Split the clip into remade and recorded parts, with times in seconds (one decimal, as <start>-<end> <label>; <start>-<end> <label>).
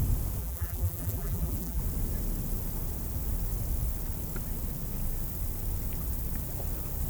0.0-0.4 recorded; 0.4-1.8 remade; 1.8-7.1 recorded